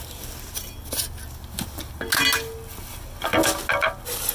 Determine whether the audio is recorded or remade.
recorded